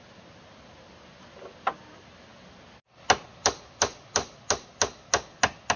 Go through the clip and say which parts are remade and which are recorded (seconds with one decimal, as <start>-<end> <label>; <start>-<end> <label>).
0.0-5.8 recorded